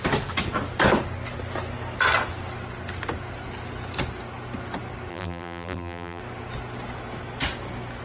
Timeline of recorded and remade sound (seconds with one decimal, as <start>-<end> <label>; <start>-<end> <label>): 0.0-5.1 recorded; 5.1-6.2 remade; 6.2-8.0 recorded